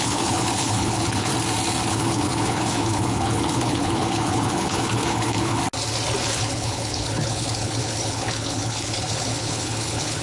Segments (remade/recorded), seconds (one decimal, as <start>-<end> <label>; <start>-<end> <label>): 0.0-1.3 remade; 1.3-1.9 recorded; 1.9-5.6 remade; 5.6-6.2 recorded; 6.2-10.2 remade